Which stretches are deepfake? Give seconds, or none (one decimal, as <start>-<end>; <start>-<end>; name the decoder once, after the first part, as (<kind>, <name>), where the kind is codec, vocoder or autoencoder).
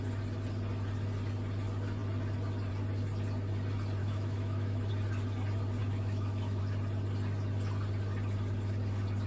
4.0-4.9 (autoencoder, DAC-VAE); 5.8-6.6